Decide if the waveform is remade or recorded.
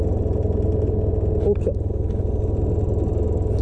recorded